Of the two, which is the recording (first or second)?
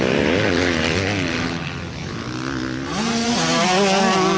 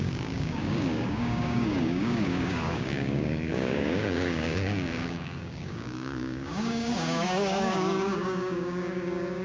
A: first